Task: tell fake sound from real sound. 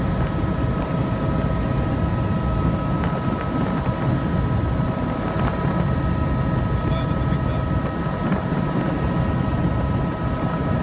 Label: real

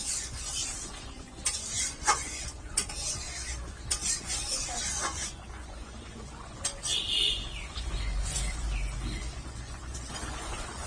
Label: fake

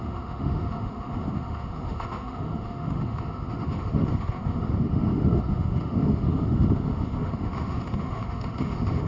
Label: fake